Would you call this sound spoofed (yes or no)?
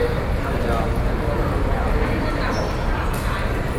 no